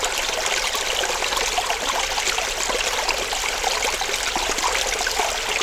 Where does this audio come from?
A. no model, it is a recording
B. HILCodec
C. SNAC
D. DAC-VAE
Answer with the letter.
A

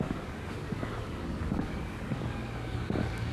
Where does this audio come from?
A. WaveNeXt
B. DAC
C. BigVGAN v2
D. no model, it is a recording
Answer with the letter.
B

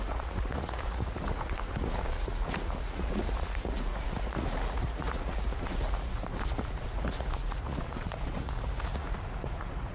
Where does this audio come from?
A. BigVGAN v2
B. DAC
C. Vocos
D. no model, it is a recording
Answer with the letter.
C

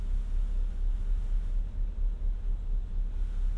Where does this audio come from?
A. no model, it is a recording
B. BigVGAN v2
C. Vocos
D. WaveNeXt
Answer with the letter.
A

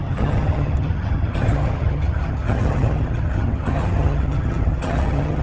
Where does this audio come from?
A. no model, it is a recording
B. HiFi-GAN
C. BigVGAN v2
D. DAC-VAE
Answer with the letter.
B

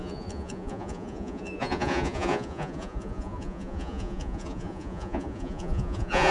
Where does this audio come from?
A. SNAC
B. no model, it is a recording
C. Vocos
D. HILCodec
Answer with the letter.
C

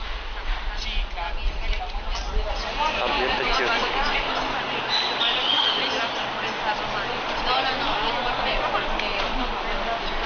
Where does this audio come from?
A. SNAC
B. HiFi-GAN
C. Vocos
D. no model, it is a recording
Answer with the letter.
D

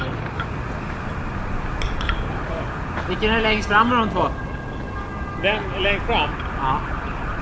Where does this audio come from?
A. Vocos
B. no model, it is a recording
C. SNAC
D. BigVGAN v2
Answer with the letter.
B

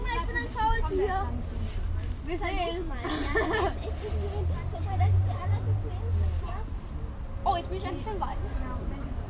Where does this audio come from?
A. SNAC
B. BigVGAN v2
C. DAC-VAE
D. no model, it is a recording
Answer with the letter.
D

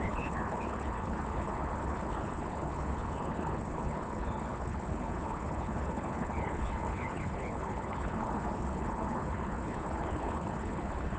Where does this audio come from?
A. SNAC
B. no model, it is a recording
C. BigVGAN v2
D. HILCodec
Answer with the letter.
D